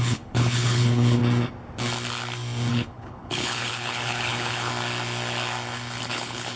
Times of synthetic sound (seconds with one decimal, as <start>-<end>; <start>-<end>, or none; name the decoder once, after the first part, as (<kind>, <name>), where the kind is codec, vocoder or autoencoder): 0.0-1.2 (codec, HILCodec); 2.7-4.7; 6.1-6.6